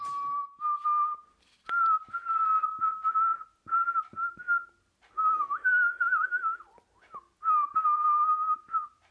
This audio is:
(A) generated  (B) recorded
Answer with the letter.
B